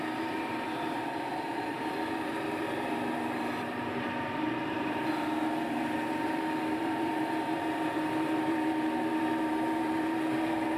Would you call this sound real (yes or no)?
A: no